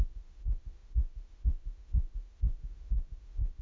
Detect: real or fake fake